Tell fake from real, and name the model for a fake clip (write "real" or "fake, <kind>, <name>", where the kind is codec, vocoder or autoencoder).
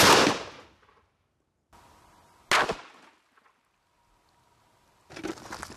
real